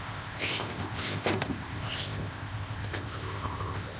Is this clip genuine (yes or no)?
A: no